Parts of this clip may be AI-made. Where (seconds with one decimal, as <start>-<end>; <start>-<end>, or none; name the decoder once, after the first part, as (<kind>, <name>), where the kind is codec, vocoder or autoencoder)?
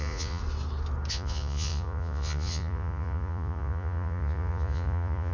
0.0-0.4 (vocoder, Vocos); 1.1-5.3